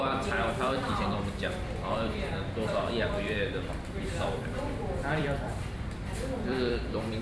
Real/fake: fake